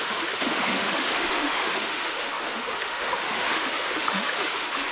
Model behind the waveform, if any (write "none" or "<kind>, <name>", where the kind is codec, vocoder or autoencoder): autoencoder, DAC-VAE